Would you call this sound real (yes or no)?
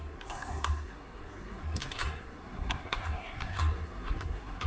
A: no